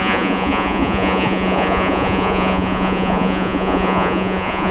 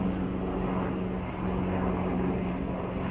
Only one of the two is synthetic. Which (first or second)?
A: first